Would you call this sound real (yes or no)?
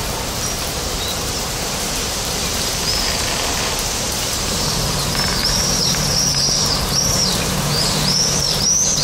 no